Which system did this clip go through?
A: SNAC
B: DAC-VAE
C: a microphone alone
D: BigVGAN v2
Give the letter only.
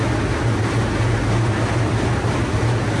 C